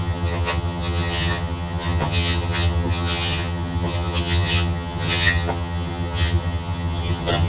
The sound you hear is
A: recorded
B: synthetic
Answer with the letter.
B